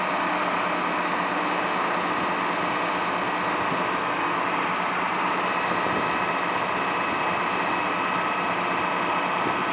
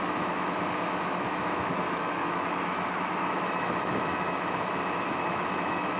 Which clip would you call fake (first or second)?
second